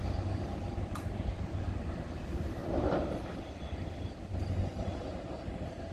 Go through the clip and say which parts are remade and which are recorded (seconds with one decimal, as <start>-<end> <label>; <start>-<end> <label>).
0.0-5.9 recorded